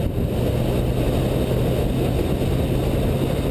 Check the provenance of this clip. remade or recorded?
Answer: recorded